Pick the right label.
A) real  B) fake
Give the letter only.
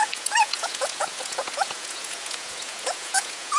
B